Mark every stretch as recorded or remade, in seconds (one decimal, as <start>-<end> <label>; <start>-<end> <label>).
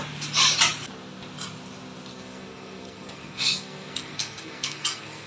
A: 0.0-2.1 recorded; 2.1-5.3 remade